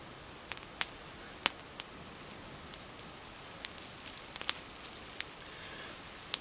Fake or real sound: real